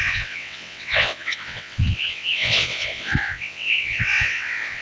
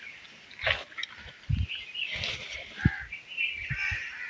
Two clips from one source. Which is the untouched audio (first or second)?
second